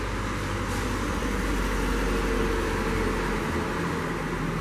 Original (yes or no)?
yes